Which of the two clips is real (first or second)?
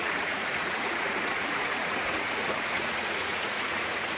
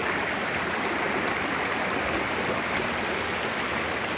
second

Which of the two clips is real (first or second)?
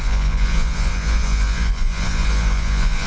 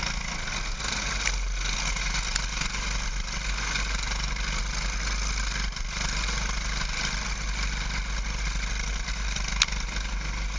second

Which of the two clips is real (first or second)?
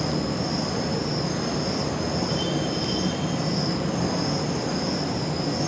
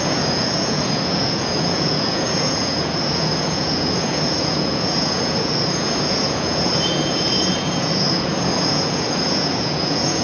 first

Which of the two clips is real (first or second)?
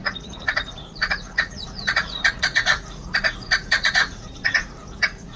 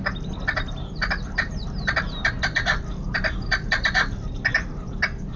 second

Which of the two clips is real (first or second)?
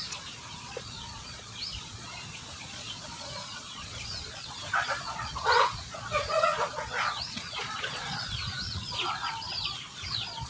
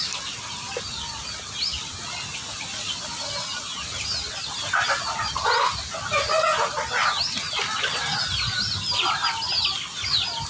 second